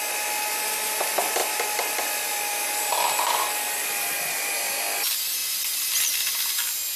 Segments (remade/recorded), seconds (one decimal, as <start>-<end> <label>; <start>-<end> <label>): 0.0-1.4 recorded; 1.4-4.5 remade; 4.5-7.0 recorded

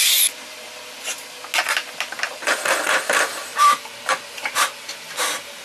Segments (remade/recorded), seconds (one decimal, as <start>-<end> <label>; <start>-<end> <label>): 0.0-3.3 recorded; 3.3-3.8 remade; 3.8-5.6 recorded